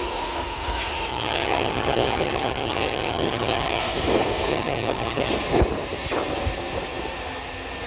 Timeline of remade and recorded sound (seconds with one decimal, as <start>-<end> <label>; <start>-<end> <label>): 0.0-1.1 recorded; 1.1-3.8 remade; 3.8-4.5 recorded; 4.5-5.3 remade; 5.3-7.9 recorded

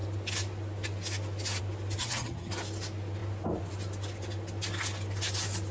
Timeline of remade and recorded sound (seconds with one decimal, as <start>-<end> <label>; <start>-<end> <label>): 0.0-2.0 recorded; 2.0-2.5 remade; 2.5-5.7 recorded

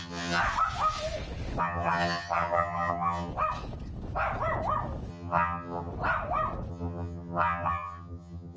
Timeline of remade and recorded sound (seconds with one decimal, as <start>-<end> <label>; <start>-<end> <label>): 0.0-0.4 remade; 0.4-1.6 recorded; 1.6-3.3 remade; 3.3-5.1 recorded; 5.1-5.9 remade; 5.9-6.7 recorded; 6.7-8.6 remade

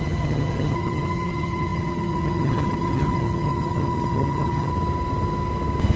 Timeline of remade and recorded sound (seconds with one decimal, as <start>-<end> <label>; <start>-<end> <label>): 0.0-4.7 remade; 4.7-6.0 recorded

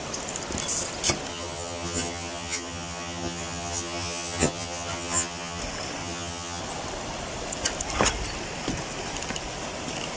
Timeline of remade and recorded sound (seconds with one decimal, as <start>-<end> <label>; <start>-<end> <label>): 0.0-1.3 recorded; 1.3-5.6 remade; 5.6-6.0 recorded; 6.0-6.6 remade; 6.6-10.2 recorded

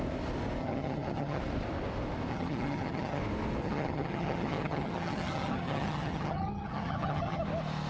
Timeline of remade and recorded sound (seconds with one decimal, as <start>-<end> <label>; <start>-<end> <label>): 0.0-0.6 recorded; 0.6-1.4 remade; 1.4-2.3 recorded; 2.3-3.2 remade; 3.2-3.6 recorded; 3.6-7.4 remade; 7.4-7.9 recorded

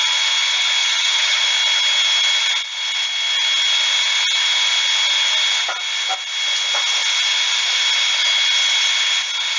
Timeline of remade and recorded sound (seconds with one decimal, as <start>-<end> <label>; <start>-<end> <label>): 0.0-0.8 recorded; 0.8-1.4 remade; 1.4-9.6 recorded